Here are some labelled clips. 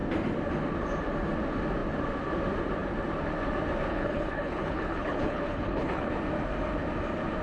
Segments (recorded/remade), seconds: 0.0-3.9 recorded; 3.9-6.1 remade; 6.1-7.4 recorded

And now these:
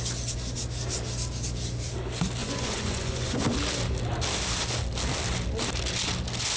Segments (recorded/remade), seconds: 0.0-2.4 recorded; 2.4-3.4 remade; 3.4-6.6 recorded

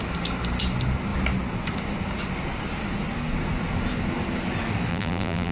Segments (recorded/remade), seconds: 0.0-4.9 recorded; 4.9-5.5 remade